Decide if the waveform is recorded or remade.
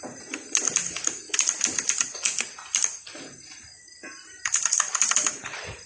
recorded